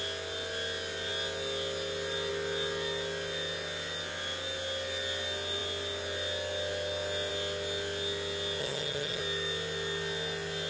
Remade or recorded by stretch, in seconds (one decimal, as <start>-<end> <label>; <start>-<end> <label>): 0.0-8.6 recorded; 8.6-9.2 remade; 9.2-10.7 recorded